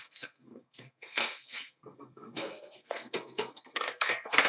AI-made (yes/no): yes